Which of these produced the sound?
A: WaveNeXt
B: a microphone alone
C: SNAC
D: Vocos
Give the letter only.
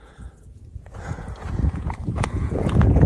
D